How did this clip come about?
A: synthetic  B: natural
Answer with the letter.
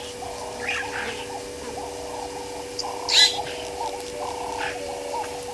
B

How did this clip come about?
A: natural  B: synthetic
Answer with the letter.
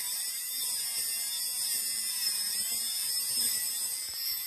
B